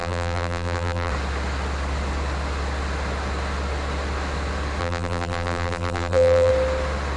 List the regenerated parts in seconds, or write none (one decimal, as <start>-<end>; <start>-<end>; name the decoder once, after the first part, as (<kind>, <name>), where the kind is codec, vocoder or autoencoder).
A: 0.0-1.1 (vocoder, BigVGAN v2); 4.8-6.5